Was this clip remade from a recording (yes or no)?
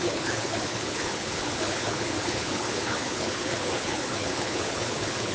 yes